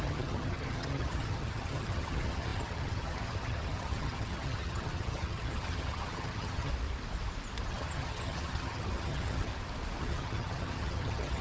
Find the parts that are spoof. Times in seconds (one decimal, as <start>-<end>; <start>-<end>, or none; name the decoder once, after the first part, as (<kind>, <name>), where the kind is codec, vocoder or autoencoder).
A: 0.0-6.7 (vocoder, HiFi-GAN); 7.7-9.5; 10.0-11.4